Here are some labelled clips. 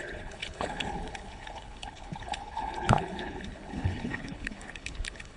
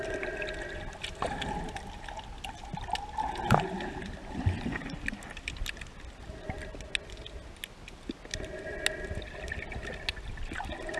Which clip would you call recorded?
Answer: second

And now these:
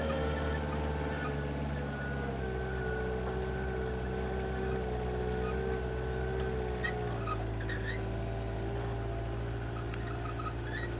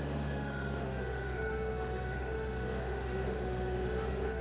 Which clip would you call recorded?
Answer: first